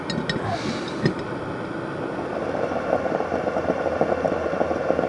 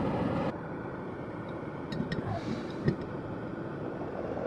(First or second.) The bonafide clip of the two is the first